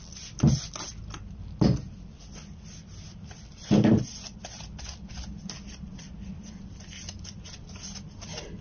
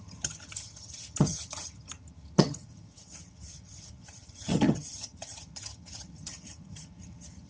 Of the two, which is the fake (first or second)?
second